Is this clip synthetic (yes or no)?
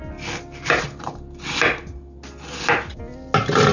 no